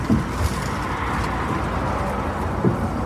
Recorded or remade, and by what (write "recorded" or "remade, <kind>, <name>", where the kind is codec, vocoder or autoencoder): recorded